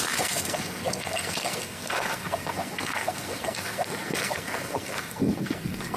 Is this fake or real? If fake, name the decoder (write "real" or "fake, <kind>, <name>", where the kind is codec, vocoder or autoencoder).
fake, codec, SNAC